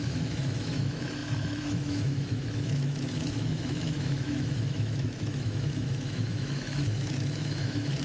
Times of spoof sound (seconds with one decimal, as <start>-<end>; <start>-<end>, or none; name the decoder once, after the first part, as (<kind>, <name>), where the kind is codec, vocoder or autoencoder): 0.0-8.0 (autoencoder, DAC-VAE)